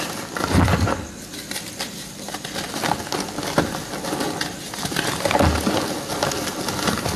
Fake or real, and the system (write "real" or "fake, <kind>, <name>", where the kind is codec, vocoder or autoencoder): real